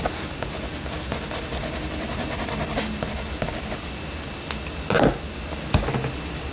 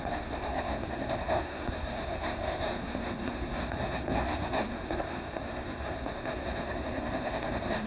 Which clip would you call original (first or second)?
first